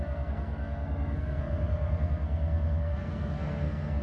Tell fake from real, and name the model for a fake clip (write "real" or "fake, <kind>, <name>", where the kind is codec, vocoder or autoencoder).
fake, codec, SNAC